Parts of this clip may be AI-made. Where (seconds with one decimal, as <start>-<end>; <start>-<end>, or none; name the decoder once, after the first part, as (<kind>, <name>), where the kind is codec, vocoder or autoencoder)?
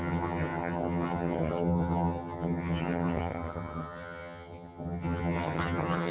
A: 0.0-6.1 (vocoder, HiFi-GAN)